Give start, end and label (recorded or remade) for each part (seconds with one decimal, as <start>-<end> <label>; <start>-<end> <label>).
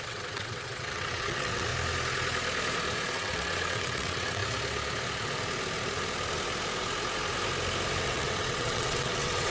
0.0-1.7 remade; 1.7-3.1 recorded; 3.1-4.4 remade; 4.4-8.0 recorded; 8.0-9.5 remade